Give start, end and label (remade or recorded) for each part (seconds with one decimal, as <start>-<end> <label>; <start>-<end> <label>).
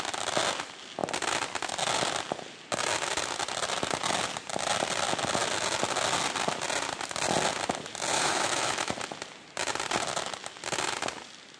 0.0-8.1 recorded; 8.1-8.9 remade; 8.9-11.6 recorded